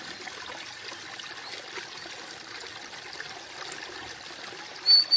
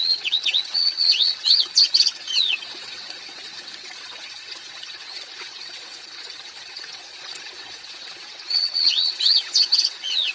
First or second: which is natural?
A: first